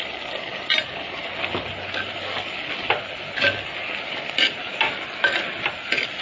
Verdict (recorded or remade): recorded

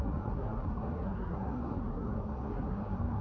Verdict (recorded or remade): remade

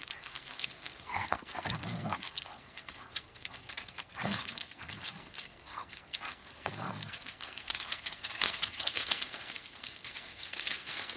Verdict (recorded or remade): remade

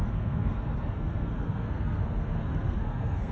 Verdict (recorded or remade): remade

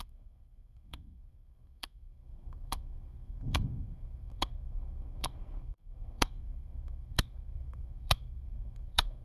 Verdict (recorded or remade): remade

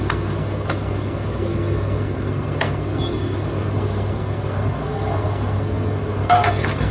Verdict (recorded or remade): remade